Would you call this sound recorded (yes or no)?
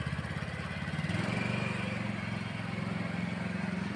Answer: yes